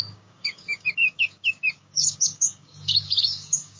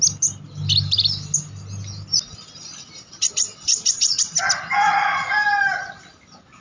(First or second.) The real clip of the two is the second